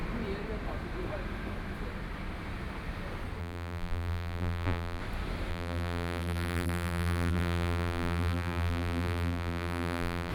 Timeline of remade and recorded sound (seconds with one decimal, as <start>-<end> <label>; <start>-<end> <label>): 0.0-3.4 recorded; 3.4-5.0 remade; 5.0-5.5 recorded; 5.5-10.3 remade